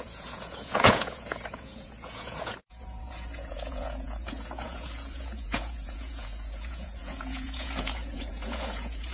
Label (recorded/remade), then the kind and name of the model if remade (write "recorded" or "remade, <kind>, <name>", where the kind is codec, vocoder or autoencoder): remade, vocoder, Vocos